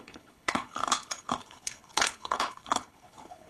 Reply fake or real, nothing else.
fake